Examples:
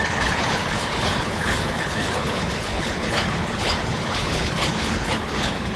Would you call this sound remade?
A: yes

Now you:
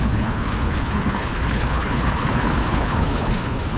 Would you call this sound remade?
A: yes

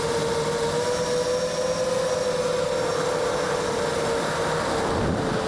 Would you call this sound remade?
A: no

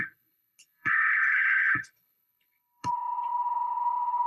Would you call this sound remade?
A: yes